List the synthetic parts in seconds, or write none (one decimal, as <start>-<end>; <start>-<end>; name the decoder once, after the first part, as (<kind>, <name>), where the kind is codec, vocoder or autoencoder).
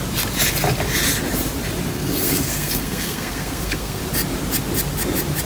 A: 1.9-4.0 (codec, SNAC)